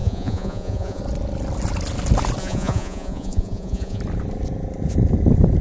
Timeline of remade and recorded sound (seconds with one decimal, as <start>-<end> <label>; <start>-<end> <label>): 0.0-1.0 remade; 1.0-2.4 recorded; 2.4-4.0 remade; 4.0-5.6 recorded